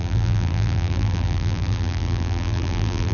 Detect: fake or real fake